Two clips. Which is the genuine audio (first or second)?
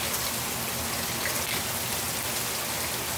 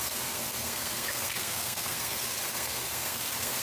first